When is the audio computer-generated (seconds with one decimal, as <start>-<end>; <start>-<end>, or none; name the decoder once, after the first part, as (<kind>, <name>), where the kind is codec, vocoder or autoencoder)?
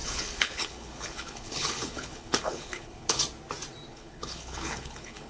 0.0-3.2 (codec, HILCodec); 3.9-5.3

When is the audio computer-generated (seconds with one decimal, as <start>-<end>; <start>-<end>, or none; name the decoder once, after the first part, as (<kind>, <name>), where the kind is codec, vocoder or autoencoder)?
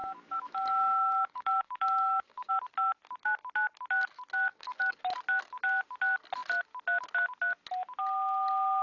0.0-2.5 (codec, DAC); 4.5-5.0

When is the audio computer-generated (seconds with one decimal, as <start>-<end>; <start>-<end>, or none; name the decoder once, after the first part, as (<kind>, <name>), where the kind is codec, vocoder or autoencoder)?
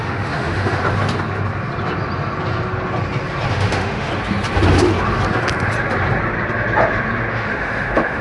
0.0-0.8 (autoencoder, DAC-VAE); 3.5-4.1; 7.3-8.2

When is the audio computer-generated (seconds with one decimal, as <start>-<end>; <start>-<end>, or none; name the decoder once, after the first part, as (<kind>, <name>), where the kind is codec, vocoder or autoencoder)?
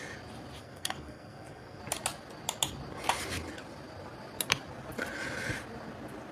0.6-1.8 (codec, SNAC)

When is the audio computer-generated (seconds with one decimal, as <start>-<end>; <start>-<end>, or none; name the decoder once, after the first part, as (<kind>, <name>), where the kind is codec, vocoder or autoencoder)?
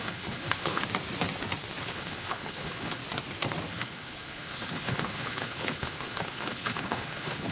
0.0-0.8 (codec, HILCodec); 1.8-3.0; 3.7-7.5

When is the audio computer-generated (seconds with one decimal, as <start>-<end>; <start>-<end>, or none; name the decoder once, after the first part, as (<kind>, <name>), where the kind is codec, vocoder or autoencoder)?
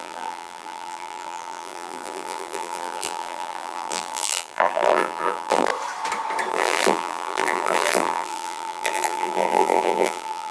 0.0-5.7 (vocoder, BigVGAN v2); 6.5-10.5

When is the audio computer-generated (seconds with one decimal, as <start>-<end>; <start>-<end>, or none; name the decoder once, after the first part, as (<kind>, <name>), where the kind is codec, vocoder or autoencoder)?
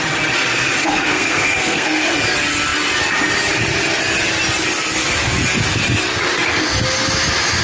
0.8-2.1 (codec, SNAC)